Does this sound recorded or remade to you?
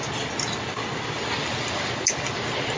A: recorded